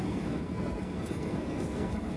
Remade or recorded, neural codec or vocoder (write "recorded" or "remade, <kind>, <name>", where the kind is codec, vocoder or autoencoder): remade, codec, SNAC